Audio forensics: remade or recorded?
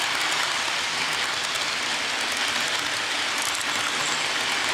recorded